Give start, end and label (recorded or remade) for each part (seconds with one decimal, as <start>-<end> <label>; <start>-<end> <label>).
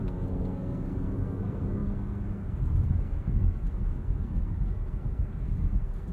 0.0-6.1 remade